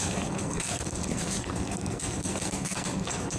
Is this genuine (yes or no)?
no